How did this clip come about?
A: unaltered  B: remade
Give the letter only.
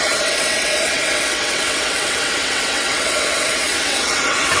B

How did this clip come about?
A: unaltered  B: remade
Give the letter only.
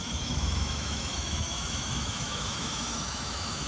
B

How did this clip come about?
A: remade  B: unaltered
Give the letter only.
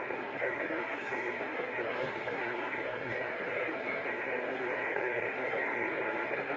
A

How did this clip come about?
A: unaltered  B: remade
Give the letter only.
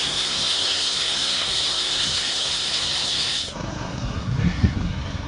B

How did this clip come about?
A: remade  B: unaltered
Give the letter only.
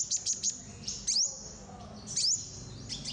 B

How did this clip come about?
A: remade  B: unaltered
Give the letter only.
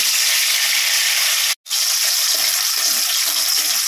B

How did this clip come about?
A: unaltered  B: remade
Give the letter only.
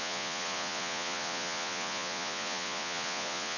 B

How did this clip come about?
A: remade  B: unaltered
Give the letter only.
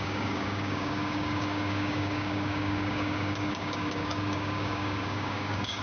A